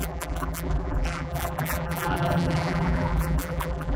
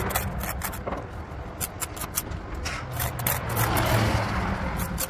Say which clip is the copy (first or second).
first